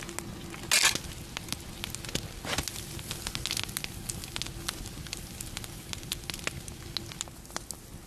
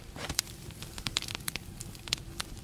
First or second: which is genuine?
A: first